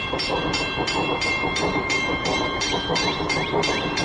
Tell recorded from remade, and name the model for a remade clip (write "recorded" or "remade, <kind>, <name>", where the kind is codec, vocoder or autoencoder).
remade, vocoder, BigVGAN v2